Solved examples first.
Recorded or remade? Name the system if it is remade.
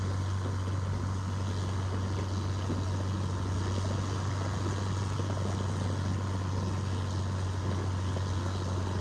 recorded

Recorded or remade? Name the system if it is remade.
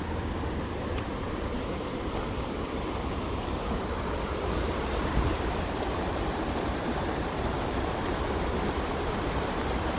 remade, vocoder, BigVGAN v2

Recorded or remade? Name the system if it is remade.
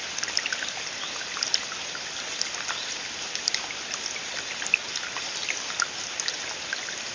recorded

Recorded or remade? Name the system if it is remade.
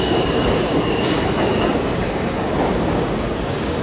remade, codec, DAC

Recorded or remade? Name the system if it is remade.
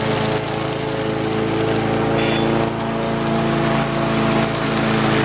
recorded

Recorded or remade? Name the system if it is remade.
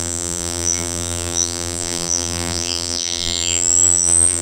remade, vocoder, BigVGAN v2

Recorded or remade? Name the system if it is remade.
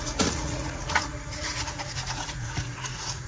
remade, vocoder, Vocos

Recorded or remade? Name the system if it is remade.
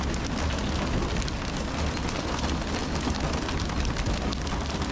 recorded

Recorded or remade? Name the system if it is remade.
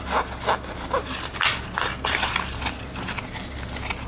recorded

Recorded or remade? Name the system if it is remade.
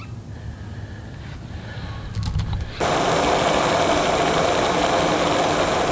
recorded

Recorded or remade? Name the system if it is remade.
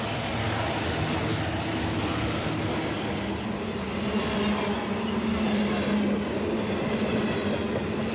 recorded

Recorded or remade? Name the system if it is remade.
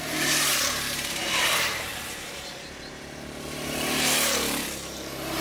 remade, vocoder, BigVGAN v2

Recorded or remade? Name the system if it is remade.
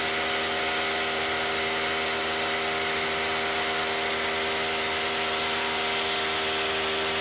recorded